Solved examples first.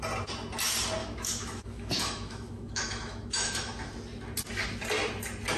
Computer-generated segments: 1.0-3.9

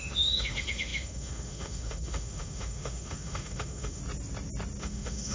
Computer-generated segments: 0.0-4.0; 4.8-5.3